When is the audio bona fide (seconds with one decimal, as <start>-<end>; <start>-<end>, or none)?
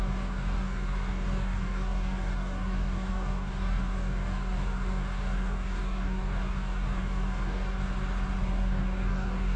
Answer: 7.8-8.5